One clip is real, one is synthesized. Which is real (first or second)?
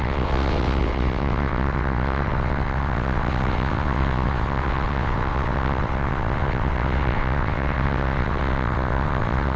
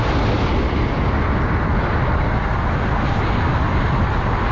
second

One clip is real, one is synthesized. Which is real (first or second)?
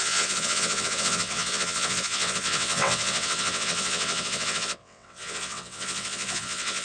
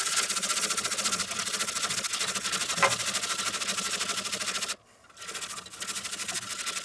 second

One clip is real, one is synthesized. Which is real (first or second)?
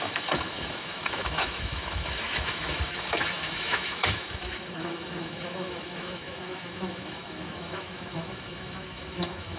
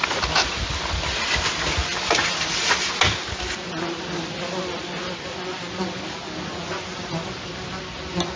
second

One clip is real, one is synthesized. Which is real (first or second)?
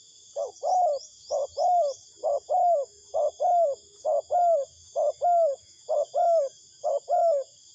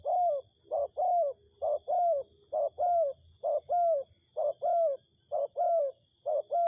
second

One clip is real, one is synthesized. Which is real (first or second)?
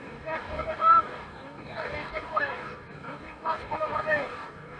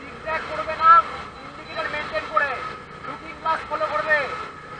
second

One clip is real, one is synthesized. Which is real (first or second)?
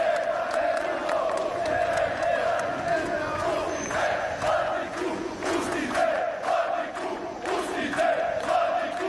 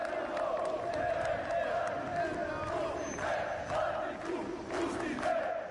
second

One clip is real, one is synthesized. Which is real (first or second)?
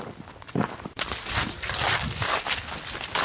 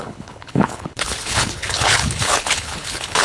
first